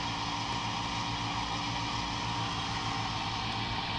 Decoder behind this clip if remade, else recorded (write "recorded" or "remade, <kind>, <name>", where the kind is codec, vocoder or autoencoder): recorded